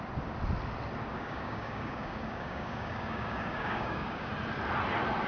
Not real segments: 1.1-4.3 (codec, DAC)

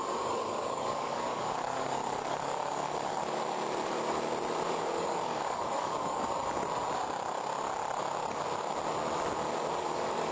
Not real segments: 0.0-3.2 (codec, DAC); 4.7-6.3; 9.7-10.3

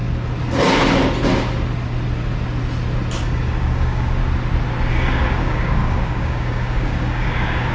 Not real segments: 3.2-4.2 (codec, DAC); 4.9-7.7

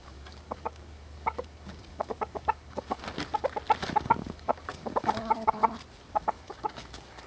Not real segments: 0.0-3.0 (codec, DAC); 3.8-5.6; 6.1-7.3

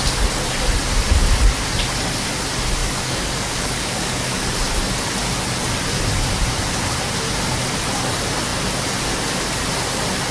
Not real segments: 2.8-4.5 (codec, DAC)

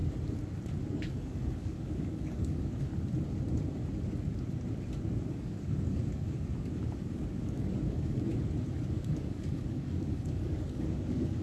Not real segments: 0.9-2.9 (codec, DAC); 5.3-8.3; 8.9-11.4